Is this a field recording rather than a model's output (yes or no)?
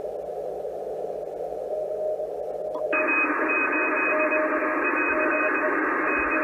yes